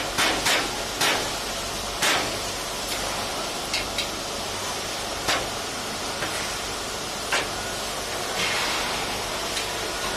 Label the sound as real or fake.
real